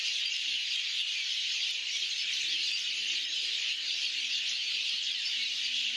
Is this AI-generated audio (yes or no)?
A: yes